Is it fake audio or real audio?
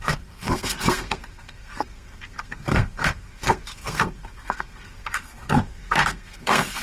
fake